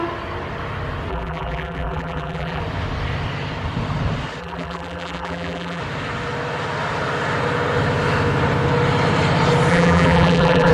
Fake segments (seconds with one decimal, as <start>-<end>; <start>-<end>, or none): 1.1-2.6; 4.4-5.8; 9.7-10.7